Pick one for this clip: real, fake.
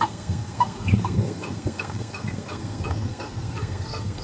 fake